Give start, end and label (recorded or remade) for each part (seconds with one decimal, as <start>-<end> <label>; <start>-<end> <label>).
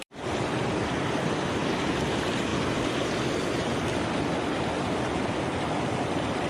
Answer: 0.0-1.6 remade; 1.6-2.1 recorded; 2.1-2.5 remade; 2.5-6.5 recorded